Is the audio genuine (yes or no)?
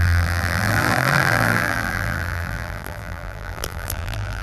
no